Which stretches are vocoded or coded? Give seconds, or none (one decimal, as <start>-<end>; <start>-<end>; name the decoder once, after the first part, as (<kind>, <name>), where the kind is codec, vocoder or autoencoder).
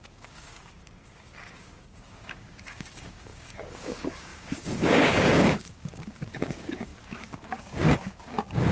0.0-8.7 (codec, DAC)